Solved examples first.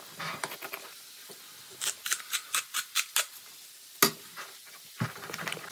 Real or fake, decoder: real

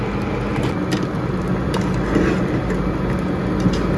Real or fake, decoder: real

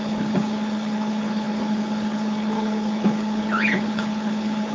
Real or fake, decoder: fake, codec, HILCodec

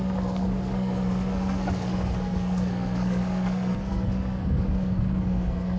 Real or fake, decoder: fake, codec, SNAC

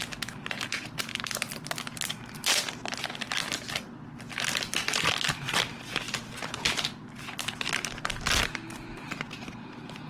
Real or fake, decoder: real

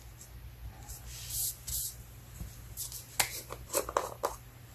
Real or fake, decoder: real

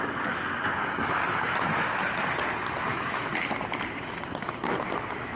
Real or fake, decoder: real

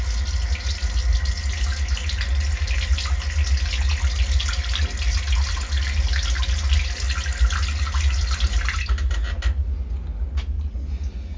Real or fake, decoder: real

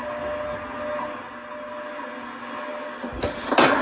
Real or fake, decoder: real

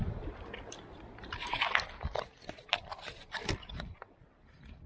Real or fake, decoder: real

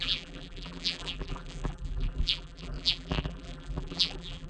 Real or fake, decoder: fake, vocoder, BigVGAN v2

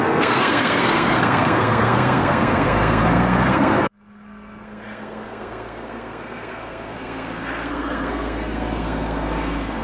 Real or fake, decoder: fake, codec, SNAC